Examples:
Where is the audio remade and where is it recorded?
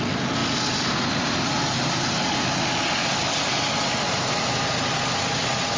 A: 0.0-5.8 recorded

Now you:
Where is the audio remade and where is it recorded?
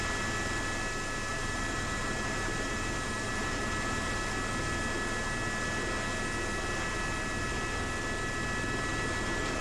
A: 0.0-1.3 recorded; 1.3-3.7 remade; 3.7-9.6 recorded